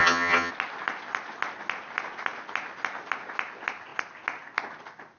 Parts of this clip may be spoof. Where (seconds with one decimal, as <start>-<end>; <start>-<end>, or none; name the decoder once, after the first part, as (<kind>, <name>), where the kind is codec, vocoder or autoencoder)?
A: 0.0-0.5 (vocoder, HiFi-GAN)